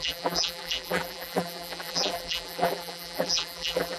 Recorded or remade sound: remade